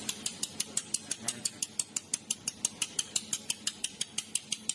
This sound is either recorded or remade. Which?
recorded